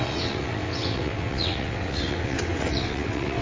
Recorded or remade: remade